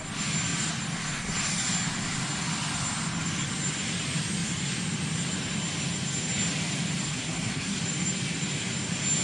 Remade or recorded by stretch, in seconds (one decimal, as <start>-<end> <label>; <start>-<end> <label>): 0.0-7.1 recorded; 7.1-7.8 remade; 7.8-9.2 recorded